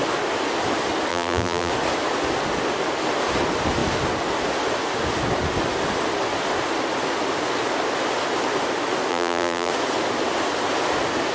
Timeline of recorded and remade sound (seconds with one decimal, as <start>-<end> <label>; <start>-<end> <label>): 0.0-1.1 recorded; 1.1-1.7 remade; 1.7-9.1 recorded; 9.1-9.7 remade; 9.7-11.3 recorded